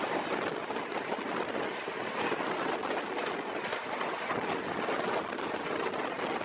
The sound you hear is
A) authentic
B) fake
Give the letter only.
A